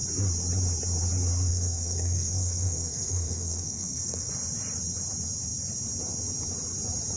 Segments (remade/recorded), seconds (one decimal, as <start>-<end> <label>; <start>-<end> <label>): 0.0-1.5 recorded; 1.5-4.3 remade; 4.3-7.2 recorded

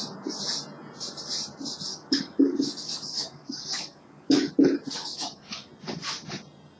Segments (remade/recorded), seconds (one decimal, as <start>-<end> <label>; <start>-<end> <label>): 0.0-1.9 recorded; 1.9-4.5 remade; 4.5-5.0 recorded; 5.0-5.7 remade; 5.7-6.8 recorded

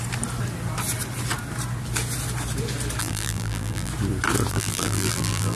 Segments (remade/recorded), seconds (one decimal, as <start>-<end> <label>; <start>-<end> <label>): 0.0-3.0 recorded; 3.0-3.9 remade; 3.9-4.5 recorded; 4.5-5.6 remade

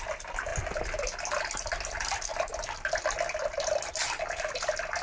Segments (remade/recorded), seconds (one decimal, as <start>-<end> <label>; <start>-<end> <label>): 0.0-5.0 recorded

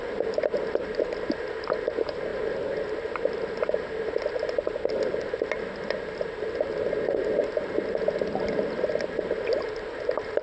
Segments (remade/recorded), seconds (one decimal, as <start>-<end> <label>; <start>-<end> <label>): 0.0-10.4 recorded

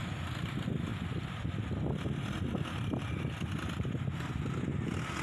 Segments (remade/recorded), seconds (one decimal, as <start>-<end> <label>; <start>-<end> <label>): 0.0-5.2 recorded